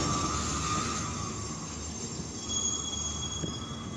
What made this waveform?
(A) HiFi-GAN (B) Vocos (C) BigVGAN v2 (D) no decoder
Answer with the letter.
D